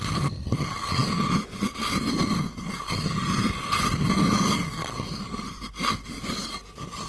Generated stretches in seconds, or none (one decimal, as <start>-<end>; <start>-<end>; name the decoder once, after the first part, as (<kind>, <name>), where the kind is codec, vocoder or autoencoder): none